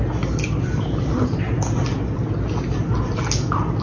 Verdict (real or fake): real